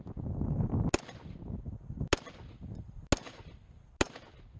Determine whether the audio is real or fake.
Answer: real